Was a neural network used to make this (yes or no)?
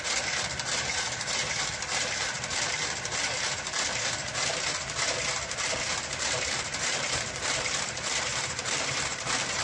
yes